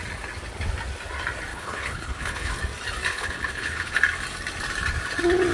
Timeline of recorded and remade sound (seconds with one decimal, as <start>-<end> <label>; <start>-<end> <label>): 0.0-1.5 recorded; 1.5-2.5 remade; 2.5-3.1 recorded; 3.1-4.0 remade; 4.0-5.5 recorded